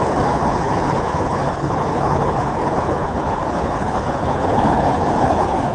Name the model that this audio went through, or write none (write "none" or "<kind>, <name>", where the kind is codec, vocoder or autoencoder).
codec, HILCodec